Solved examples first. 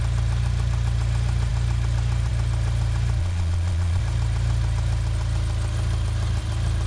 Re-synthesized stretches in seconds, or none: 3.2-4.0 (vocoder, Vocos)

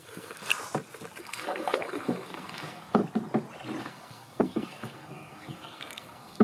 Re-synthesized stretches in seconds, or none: 0.0-0.5 (codec, SNAC); 1.2-3.0; 3.8-6.4